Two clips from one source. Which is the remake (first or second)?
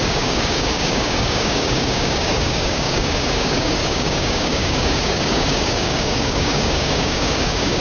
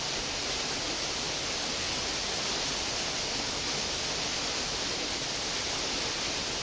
first